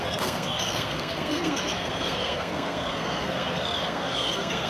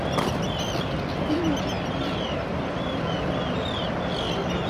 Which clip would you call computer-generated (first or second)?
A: first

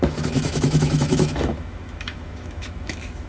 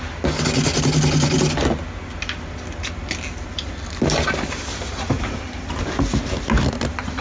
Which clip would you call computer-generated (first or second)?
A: first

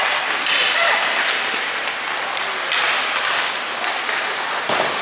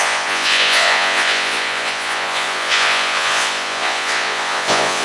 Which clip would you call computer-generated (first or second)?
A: second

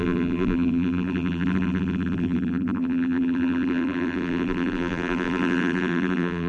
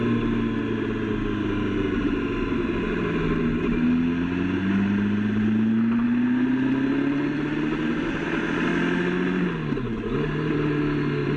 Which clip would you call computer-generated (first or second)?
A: first